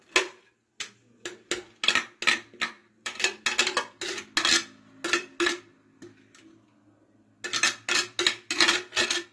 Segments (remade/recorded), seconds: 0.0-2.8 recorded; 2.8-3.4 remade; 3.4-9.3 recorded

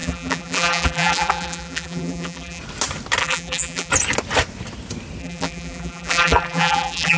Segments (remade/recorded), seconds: 0.0-2.6 remade; 2.6-3.2 recorded; 3.2-3.9 remade; 3.9-5.2 recorded; 5.2-7.2 remade

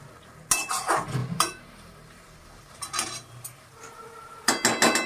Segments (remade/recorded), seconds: 0.0-1.2 recorded; 1.2-4.3 remade; 4.3-5.1 recorded

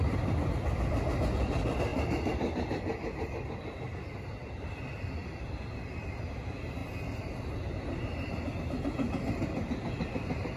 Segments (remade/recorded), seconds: 0.0-1.9 remade; 1.9-4.6 recorded; 4.6-6.8 remade; 6.8-8.6 recorded; 8.6-10.6 remade